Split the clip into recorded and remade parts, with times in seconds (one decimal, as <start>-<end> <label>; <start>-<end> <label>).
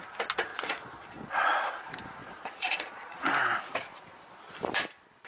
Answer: 0.0-0.5 recorded; 0.5-1.7 remade; 1.7-2.2 recorded; 2.2-3.3 remade; 3.3-5.3 recorded